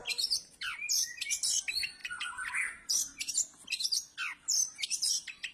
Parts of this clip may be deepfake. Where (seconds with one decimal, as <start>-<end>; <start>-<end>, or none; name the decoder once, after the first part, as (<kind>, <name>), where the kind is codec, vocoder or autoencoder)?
0.0-0.9 (vocoder, BigVGAN v2); 2.0-3.3; 4.3-5.1